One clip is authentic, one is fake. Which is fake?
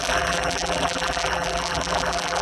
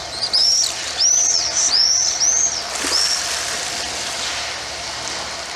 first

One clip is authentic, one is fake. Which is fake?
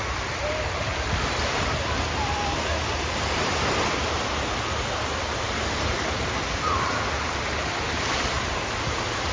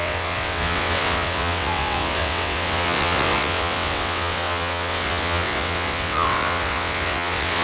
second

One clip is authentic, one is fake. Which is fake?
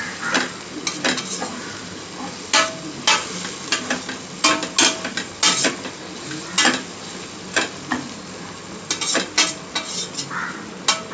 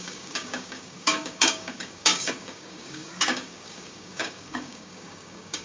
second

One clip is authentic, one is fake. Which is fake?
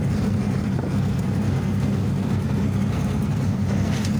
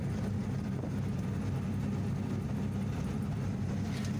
first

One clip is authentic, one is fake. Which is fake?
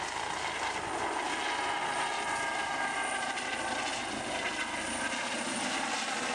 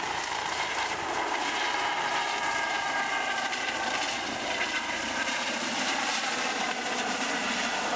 second